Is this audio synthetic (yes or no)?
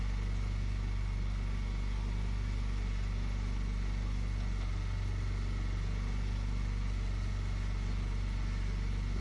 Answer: no